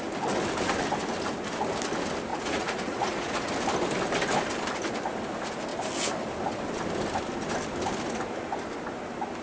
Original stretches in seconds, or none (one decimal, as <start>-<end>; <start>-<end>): 0.0-2.3; 3.5-9.4